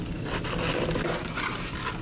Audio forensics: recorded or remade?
recorded